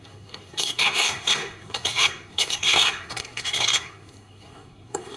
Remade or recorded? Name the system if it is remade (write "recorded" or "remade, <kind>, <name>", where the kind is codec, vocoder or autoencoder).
remade, codec, SNAC